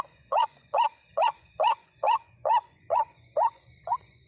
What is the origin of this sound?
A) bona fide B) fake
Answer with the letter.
B